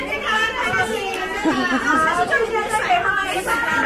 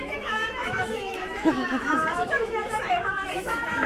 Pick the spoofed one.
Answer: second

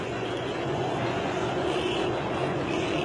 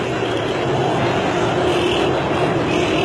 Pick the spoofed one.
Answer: first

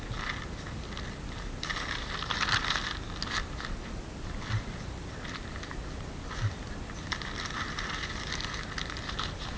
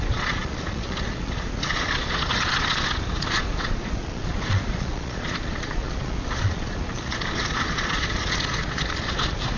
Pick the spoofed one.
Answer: second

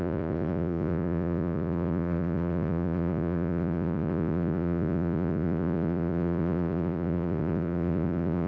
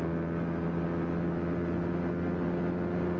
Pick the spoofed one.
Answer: first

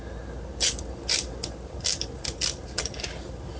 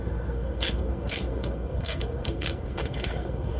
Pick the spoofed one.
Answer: second